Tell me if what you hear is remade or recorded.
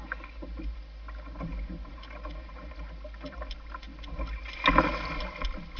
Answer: recorded